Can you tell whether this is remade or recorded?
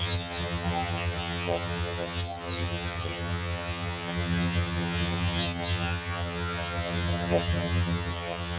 remade